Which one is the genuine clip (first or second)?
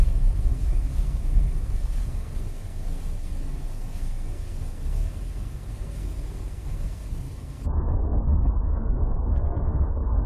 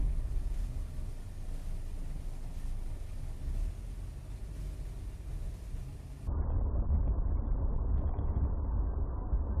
second